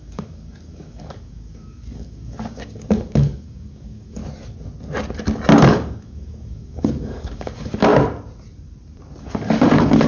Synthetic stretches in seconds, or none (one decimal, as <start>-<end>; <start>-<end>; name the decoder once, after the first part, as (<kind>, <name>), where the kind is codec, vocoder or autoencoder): 0.0-4.2 (codec, DAC); 5.7-7.9; 9.2-10.1